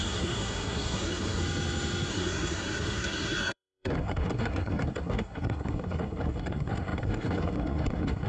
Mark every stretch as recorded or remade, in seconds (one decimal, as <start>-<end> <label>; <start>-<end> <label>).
0.0-1.4 remade; 1.4-2.1 recorded; 2.1-8.3 remade